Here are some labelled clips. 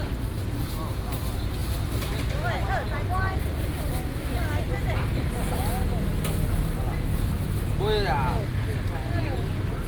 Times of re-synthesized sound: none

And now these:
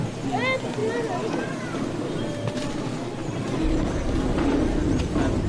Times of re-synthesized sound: 3.2-5.0 (vocoder, BigVGAN v2)

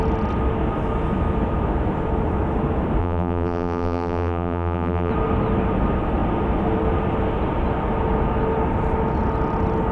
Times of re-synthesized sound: 3.0-5.1 (vocoder, BigVGAN v2)

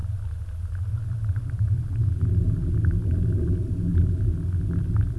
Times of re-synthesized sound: none

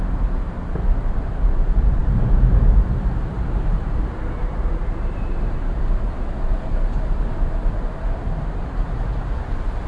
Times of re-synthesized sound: 0.0-9.9 (vocoder, BigVGAN v2)

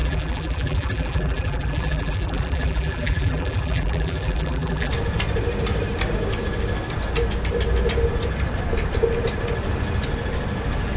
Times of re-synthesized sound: 0.0-4.9 (vocoder, BigVGAN v2)

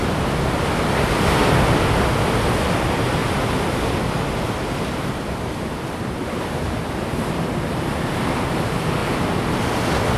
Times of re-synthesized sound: none

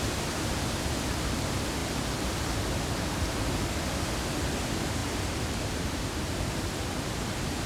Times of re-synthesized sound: 5.0-6.0 (vocoder, BigVGAN v2)